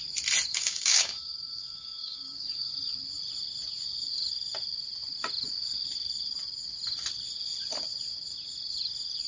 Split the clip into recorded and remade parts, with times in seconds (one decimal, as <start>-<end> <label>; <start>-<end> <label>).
0.0-0.5 recorded; 0.5-2.7 remade; 2.7-9.3 recorded